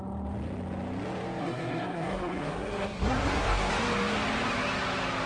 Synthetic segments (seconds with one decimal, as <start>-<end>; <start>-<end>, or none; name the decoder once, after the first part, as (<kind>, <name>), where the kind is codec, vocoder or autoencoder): 1.4-3.7 (codec, SNAC)